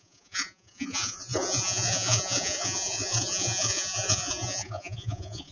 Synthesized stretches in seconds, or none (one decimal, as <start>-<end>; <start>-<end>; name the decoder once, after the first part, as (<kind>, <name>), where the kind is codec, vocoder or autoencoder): 0.0-5.5 (vocoder, Vocos)